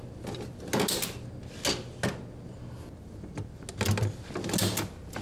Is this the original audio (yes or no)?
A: yes